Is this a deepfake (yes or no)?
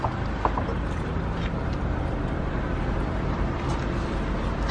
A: no